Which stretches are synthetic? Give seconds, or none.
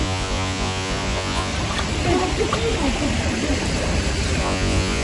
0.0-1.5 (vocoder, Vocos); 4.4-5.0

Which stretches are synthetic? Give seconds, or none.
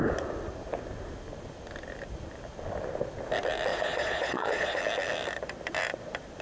3.7-4.8 (vocoder, Vocos)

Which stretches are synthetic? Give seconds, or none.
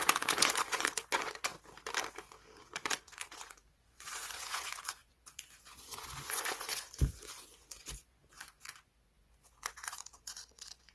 0.0-1.5 (vocoder, Vocos); 2.6-10.9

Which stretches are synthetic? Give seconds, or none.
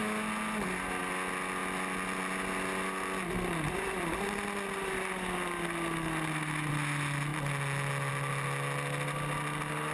none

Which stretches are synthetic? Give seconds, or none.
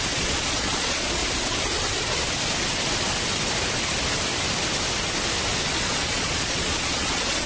0.0-1.2 (vocoder, Vocos); 5.7-7.5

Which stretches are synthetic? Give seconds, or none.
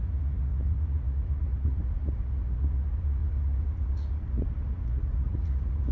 0.0-5.9 (vocoder, Vocos)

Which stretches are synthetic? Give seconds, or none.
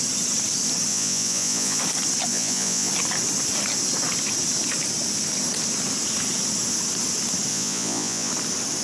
0.9-1.8 (vocoder, Vocos); 2.3-2.9; 7.5-8.3